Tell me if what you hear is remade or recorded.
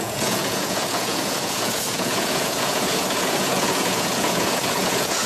remade